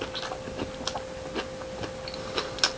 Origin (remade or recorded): recorded